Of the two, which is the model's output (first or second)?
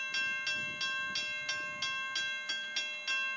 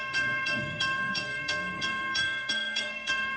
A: second